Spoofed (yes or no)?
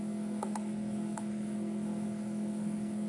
yes